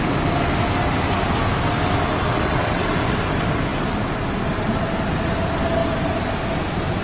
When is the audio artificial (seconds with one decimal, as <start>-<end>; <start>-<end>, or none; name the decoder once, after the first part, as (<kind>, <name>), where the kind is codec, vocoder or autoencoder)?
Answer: 2.3-2.9 (vocoder, WaveNeXt)